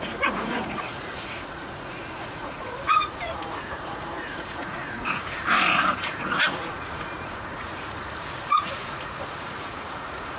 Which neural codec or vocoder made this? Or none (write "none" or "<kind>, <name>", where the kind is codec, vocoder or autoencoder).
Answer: vocoder, Vocos